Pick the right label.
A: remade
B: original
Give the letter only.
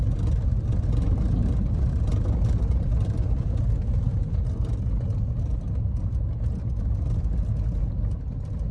B